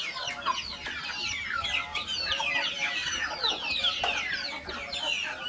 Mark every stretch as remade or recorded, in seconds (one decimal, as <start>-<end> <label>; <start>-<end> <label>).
0.0-1.9 recorded; 1.9-2.5 remade; 2.5-3.0 recorded; 3.0-4.5 remade; 4.5-5.5 recorded